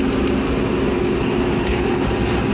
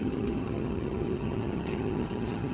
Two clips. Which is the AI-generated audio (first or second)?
second